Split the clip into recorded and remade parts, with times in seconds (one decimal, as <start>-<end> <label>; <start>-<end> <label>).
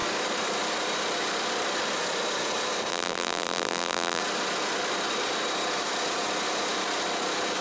0.0-2.9 recorded; 2.9-4.2 remade; 4.2-7.6 recorded